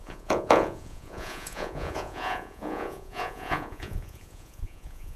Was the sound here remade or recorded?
remade